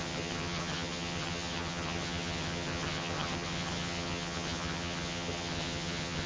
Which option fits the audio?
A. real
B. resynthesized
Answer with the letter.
B